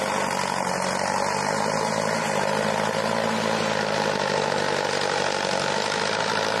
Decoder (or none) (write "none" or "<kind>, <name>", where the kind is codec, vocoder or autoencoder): none